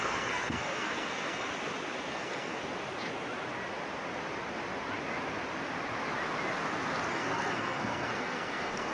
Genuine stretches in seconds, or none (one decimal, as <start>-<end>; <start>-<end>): 1.5-2.1; 2.6-7.1